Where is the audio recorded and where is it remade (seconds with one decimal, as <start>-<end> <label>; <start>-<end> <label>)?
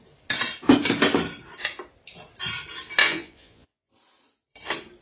0.0-3.0 recorded; 3.0-3.9 remade; 3.9-5.0 recorded